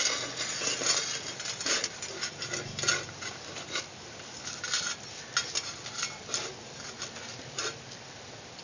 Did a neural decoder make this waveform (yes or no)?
no